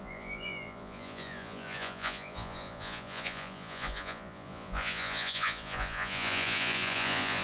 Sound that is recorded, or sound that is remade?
remade